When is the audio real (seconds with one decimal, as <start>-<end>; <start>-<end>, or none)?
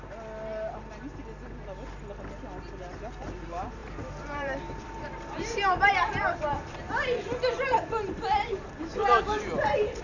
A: 0.0-3.8; 5.2-10.0